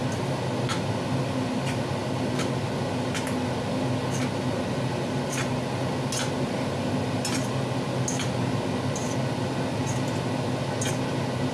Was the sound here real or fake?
real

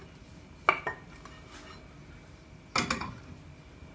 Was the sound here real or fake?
real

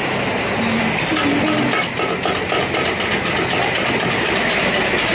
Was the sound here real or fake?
real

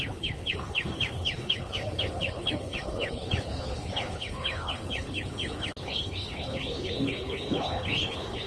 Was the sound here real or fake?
fake